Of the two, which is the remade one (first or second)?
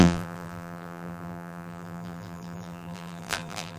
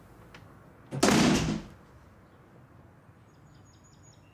first